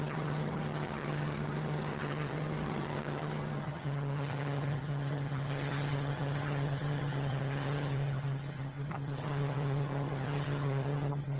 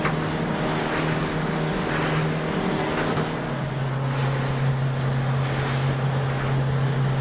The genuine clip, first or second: second